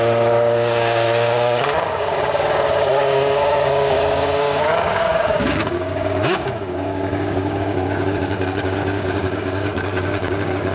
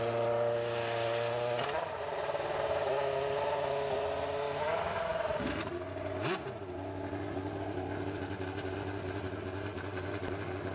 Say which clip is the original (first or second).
second